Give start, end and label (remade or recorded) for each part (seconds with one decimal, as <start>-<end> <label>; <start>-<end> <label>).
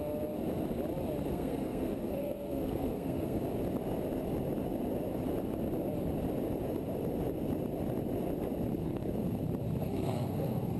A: 0.0-1.3 recorded; 1.3-3.4 remade; 3.4-8.8 recorded; 8.8-9.4 remade; 9.4-9.8 recorded; 9.8-10.8 remade